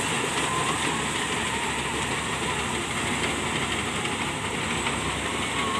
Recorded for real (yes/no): yes